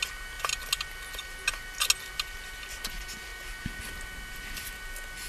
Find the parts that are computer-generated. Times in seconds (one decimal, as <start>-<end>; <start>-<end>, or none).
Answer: none